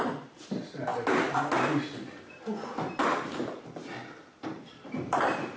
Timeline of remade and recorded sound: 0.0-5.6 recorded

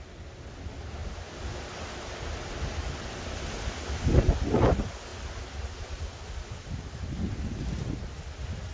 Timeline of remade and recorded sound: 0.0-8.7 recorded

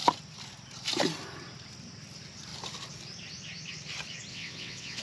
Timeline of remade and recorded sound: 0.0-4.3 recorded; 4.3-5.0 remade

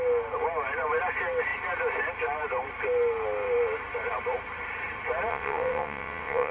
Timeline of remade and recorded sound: 0.0-5.3 recorded; 5.3-6.5 remade

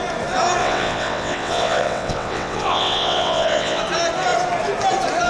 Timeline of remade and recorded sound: 0.0-0.6 recorded; 0.6-3.8 remade; 3.8-5.3 recorded

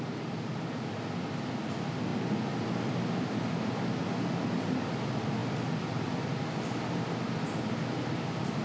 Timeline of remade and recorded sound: 0.0-8.6 recorded